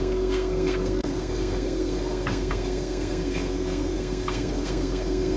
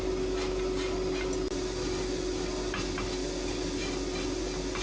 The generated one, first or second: first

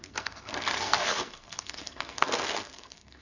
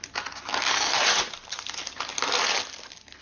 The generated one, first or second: first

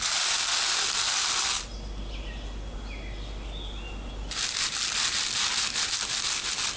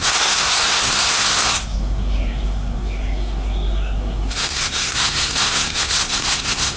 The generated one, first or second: second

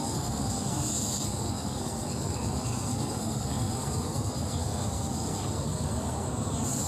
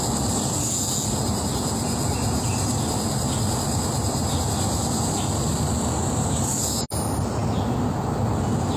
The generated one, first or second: first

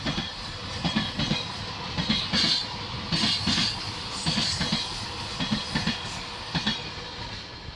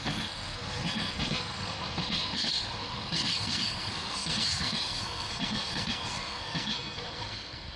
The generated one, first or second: second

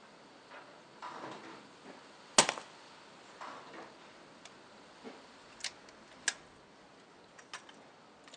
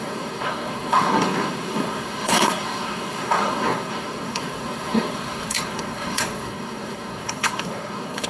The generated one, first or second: second